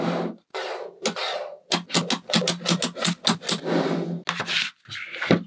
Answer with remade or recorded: recorded